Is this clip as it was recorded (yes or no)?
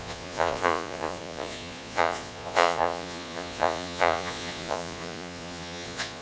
no